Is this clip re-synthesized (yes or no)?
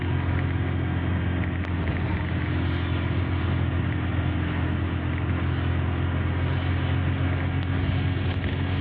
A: no